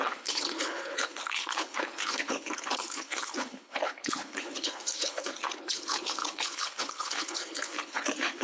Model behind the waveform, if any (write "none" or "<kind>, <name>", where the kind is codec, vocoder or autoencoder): codec, HILCodec